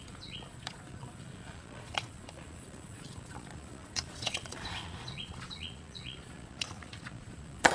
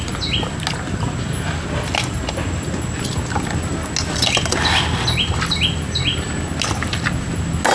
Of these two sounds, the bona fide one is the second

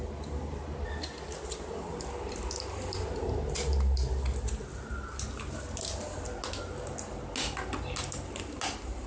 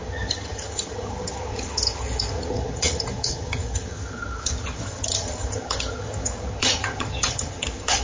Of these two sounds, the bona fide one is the first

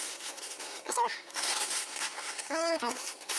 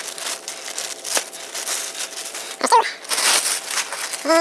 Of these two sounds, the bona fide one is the second